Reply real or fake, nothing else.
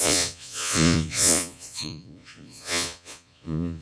fake